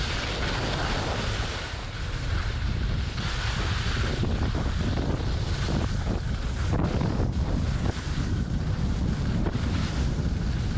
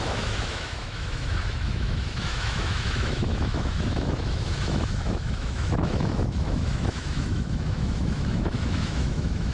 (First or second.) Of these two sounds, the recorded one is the first